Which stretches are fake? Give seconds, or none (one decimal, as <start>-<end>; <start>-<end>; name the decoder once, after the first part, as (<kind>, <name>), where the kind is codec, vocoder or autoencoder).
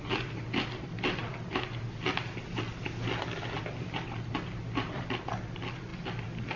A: none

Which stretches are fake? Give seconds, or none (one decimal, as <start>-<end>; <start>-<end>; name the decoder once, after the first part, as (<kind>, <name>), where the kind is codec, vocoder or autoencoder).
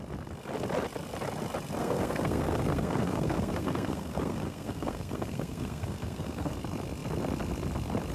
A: 1.8-6.5 (codec, SNAC)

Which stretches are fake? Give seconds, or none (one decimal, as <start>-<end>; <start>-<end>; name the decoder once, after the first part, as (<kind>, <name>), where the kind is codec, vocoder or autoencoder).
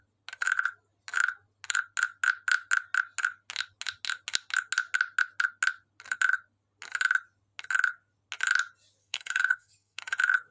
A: 9.0-10.0 (codec, SNAC)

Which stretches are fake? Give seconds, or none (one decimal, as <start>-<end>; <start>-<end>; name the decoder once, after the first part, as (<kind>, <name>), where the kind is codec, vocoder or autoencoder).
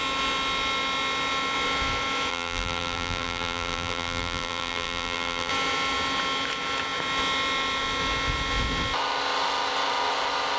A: 2.3-5.5 (vocoder, BigVGAN v2)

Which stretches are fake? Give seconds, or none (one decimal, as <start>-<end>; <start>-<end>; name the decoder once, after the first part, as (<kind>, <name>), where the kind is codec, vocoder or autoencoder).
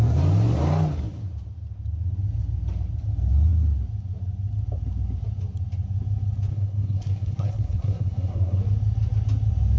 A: 6.5-8.6 (codec, SNAC)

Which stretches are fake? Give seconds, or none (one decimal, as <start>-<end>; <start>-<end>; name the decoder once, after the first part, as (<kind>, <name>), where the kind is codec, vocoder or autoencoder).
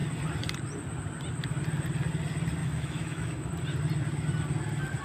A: 2.6-3.5 (autoencoder, DAC-VAE)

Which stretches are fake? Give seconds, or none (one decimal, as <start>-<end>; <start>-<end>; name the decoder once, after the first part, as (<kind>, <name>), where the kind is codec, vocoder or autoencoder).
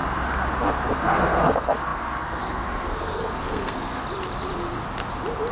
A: 0.9-4.0 (codec, SNAC)